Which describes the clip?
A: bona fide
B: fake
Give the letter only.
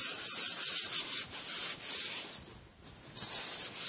A